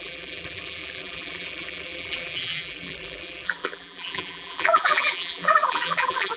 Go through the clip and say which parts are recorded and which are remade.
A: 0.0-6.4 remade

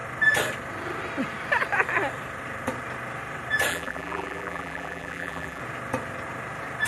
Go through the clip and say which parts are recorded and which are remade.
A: 0.0-3.7 recorded; 3.7-5.6 remade; 5.6-6.9 recorded

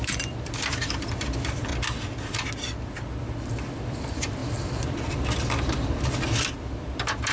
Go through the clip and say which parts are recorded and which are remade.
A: 0.0-1.7 remade; 1.7-3.4 recorded; 3.4-7.3 remade

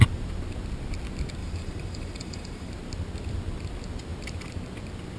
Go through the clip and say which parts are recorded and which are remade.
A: 0.0-1.4 recorded; 1.4-2.7 remade; 2.7-5.2 recorded

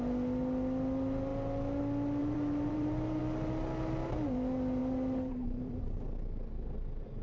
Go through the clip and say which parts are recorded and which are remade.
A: 0.0-2.2 recorded; 2.2-3.2 remade; 3.2-4.8 recorded; 4.8-6.0 remade; 6.0-7.2 recorded

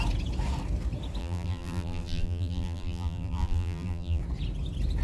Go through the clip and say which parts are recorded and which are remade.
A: 0.0-1.2 recorded; 1.2-4.2 remade; 4.2-5.0 recorded

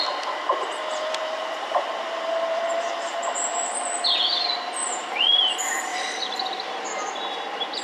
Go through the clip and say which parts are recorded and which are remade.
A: 0.0-0.9 recorded; 0.9-2.6 remade; 2.6-5.9 recorded; 5.9-6.9 remade; 6.9-7.8 recorded